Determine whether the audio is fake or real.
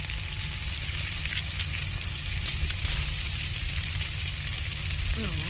real